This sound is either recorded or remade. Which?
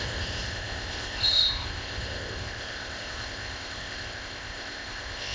remade